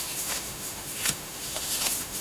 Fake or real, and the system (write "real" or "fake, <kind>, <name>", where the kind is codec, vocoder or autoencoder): fake, autoencoder, DAC-VAE